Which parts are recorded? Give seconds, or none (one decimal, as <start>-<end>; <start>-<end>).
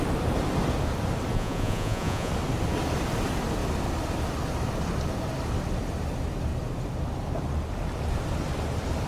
0.0-1.3; 2.3-9.1